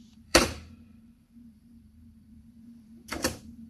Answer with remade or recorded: remade